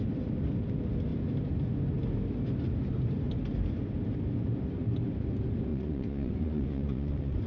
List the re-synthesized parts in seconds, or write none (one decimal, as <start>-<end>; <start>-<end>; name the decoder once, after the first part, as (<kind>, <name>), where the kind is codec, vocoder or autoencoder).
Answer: 5.7-7.5 (vocoder, Vocos)